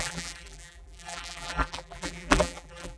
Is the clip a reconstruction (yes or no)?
yes